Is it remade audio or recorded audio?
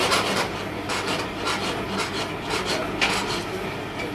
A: recorded